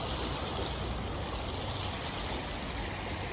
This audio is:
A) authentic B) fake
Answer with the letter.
A